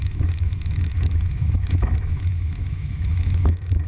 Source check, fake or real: fake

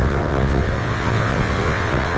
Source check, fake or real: fake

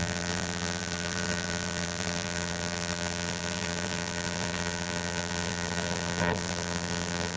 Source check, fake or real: fake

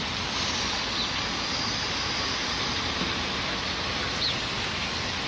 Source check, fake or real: real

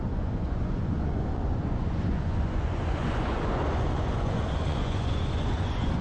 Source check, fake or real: fake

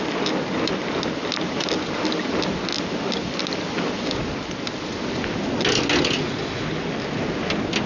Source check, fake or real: real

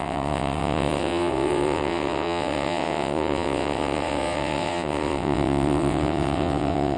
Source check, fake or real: fake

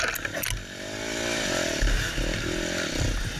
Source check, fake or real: real